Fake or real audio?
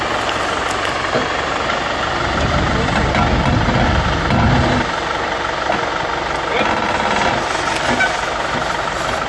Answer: real